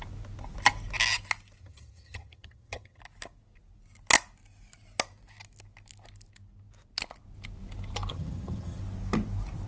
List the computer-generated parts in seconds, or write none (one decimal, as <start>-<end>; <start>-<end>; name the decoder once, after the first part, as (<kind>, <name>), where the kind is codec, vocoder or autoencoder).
1.6-3.0 (vocoder, HiFi-GAN); 8.1-8.8